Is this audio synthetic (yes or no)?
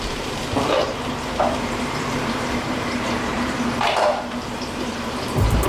yes